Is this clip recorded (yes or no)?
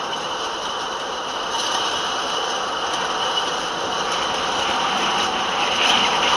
yes